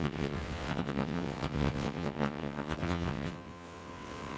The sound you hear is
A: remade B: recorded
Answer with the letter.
A